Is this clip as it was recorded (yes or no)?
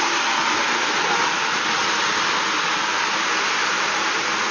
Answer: yes